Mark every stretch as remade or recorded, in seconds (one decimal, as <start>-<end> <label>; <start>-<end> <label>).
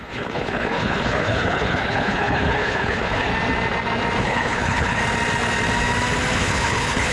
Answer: 0.0-3.3 remade; 3.3-4.2 recorded; 4.2-5.0 remade; 5.0-6.4 recorded; 6.4-7.1 remade